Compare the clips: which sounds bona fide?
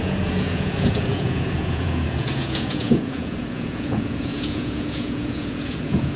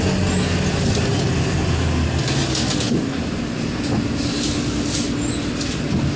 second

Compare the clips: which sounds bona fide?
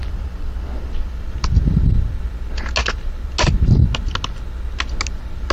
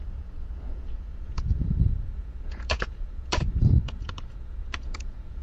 first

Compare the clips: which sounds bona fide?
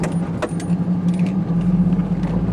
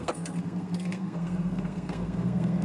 first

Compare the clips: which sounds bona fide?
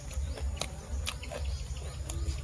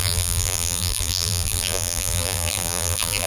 first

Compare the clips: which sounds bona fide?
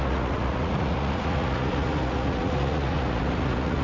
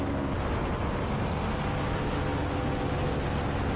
second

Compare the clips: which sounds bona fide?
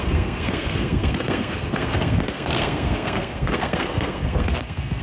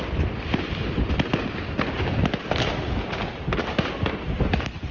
second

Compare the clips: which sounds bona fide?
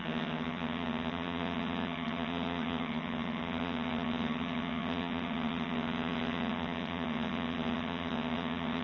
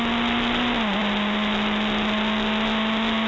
second